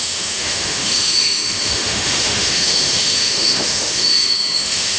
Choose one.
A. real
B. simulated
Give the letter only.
B